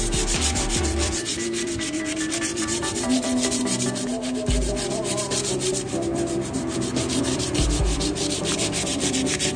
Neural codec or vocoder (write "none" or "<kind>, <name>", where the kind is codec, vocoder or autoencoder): vocoder, BigVGAN v2